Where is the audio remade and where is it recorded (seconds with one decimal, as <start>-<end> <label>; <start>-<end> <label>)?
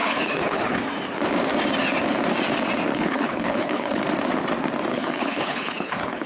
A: 0.0-0.8 remade; 0.8-2.9 recorded; 2.9-4.0 remade; 4.0-4.9 recorded; 4.9-6.3 remade